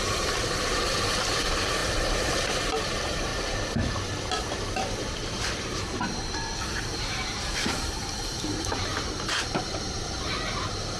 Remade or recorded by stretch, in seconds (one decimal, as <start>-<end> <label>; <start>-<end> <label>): 0.0-1.8 remade; 1.8-2.8 recorded; 2.8-3.3 remade; 3.3-4.5 recorded; 4.5-11.0 remade